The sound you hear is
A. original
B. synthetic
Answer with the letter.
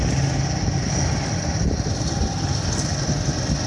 A